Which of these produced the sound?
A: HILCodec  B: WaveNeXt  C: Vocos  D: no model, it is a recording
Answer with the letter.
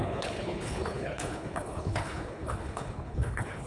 A